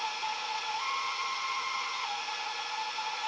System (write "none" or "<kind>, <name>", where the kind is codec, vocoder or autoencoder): vocoder, Vocos